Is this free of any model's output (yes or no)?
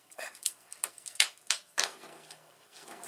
no